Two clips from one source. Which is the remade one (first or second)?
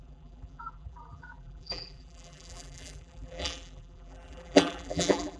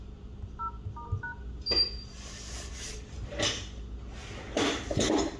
first